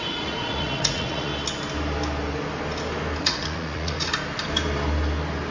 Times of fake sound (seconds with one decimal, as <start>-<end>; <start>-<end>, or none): 0.0-1.3; 3.2-4.1